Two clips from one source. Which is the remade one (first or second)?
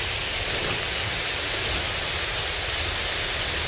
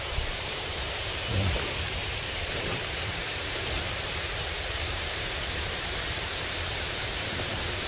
second